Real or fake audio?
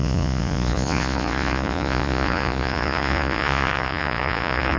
fake